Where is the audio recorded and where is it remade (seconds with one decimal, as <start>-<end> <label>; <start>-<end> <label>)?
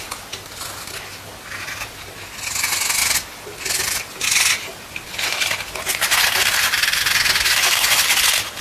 0.0-8.6 recorded